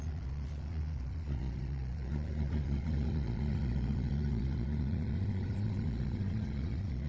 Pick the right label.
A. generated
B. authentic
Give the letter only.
A